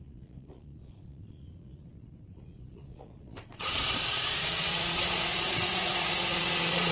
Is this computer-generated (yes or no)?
yes